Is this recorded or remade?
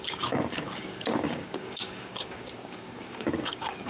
remade